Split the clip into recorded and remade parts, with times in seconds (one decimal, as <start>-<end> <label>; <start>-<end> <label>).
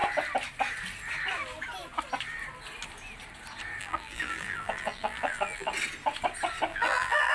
0.0-3.8 recorded; 3.8-5.7 remade; 5.7-6.7 recorded; 6.7-7.3 remade